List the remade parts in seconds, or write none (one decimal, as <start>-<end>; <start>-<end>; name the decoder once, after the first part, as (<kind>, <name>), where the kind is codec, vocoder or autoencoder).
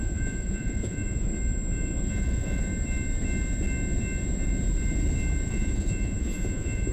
0.0-1.3 (vocoder, Vocos); 2.1-2.7; 5.5-6.9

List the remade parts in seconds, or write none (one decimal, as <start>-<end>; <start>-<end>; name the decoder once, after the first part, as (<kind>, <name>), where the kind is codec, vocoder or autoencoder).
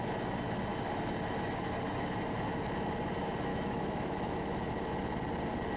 3.5-4.7 (autoencoder, DAC-VAE)